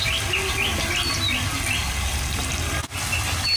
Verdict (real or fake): real